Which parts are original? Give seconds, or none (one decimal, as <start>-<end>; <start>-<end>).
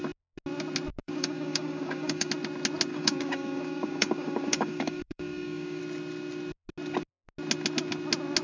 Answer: 0.0-0.9; 2.3-2.9; 5.8-8.4